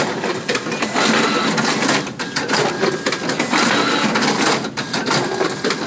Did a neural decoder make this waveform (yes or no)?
no